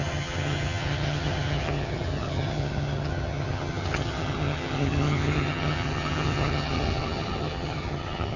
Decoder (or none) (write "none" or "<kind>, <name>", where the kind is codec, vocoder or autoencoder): vocoder, HiFi-GAN